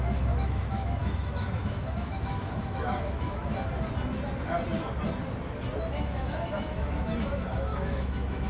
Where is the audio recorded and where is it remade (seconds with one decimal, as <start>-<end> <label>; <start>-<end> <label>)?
0.0-3.5 remade; 3.5-6.0 recorded; 6.0-8.5 remade